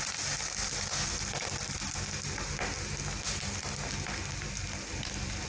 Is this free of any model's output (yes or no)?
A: yes